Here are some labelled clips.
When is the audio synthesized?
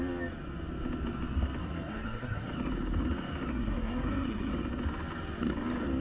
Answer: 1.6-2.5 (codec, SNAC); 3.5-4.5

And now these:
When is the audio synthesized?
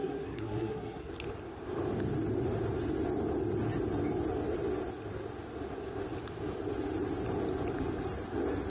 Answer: 0.0-1.1 (codec, SNAC)